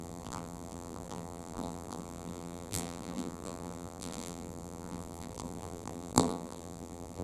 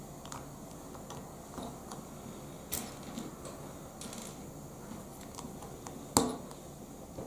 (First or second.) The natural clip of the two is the second